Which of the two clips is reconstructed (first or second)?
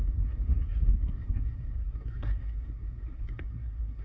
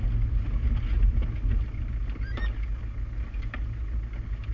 first